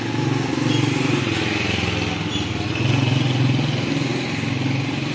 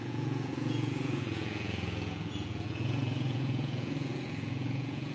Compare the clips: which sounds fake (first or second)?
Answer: second